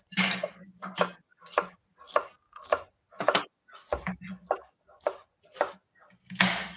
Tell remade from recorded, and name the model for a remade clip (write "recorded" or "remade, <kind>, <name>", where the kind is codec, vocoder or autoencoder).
recorded